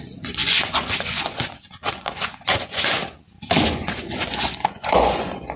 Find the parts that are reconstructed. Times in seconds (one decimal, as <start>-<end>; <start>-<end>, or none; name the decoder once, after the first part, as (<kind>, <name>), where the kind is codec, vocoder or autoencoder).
0.0-3.0 (vocoder, Vocos); 3.6-5.6